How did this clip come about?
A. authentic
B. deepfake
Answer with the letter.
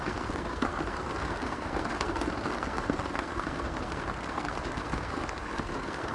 B